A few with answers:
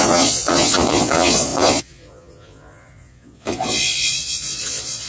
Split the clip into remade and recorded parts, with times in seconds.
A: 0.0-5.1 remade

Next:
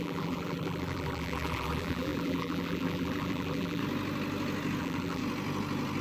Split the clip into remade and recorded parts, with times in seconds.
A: 0.0-3.8 remade; 3.8-4.8 recorded; 4.8-5.2 remade; 5.2-6.0 recorded

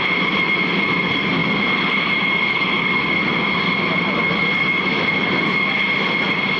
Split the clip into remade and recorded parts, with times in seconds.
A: 0.0-6.6 recorded

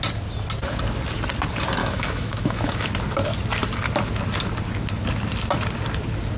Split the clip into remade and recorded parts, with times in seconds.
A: 0.0-1.8 recorded; 1.8-2.9 remade; 2.9-6.4 recorded

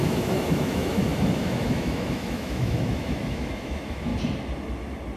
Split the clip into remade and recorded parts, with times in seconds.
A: 0.0-4.1 remade; 4.1-5.2 recorded